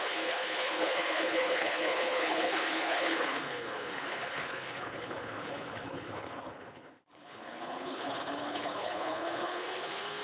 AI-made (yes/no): yes